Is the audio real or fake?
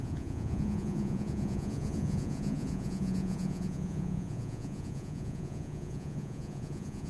fake